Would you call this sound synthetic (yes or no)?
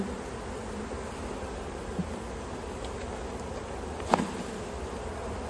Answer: no